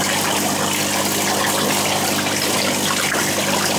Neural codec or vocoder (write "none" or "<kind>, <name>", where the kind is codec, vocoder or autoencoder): none